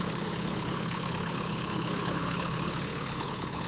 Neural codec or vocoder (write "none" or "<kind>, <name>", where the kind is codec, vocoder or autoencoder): codec, HILCodec